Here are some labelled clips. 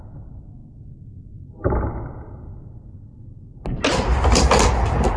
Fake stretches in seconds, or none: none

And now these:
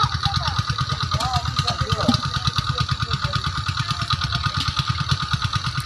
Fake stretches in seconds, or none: 1.4-4.9

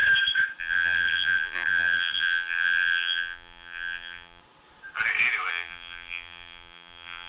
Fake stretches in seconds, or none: 0.6-4.4; 5.5-7.3